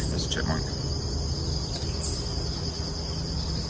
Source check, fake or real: real